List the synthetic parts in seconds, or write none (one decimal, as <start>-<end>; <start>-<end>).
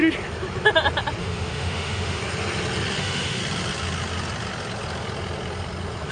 1.2-2.2; 3.0-3.4